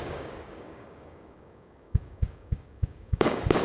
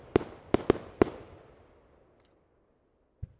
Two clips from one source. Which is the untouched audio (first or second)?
second